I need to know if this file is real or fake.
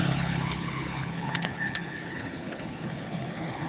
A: fake